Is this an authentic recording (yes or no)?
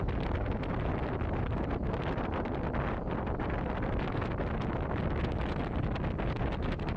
yes